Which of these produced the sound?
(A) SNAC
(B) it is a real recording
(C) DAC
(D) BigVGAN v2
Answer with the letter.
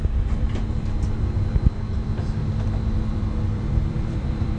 D